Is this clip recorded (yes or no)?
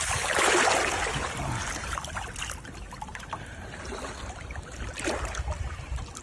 yes